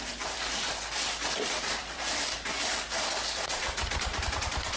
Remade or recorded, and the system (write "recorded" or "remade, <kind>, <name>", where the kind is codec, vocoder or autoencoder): remade, vocoder, BigVGAN v2